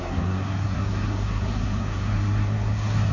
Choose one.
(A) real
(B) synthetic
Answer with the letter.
B